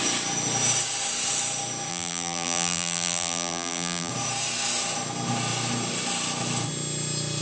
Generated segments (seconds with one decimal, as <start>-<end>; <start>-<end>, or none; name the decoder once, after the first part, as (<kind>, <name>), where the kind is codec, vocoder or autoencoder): 1.9-4.1 (vocoder, BigVGAN v2)